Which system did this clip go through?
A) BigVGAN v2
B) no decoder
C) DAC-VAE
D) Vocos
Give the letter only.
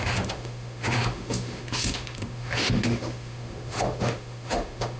C